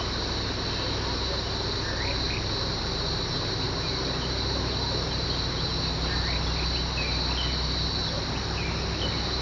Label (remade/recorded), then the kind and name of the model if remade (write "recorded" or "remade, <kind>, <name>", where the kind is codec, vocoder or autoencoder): recorded